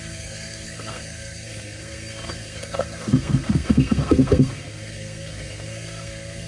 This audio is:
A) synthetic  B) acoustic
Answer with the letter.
A